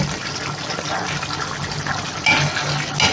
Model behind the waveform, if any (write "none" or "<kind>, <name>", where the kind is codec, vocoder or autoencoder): none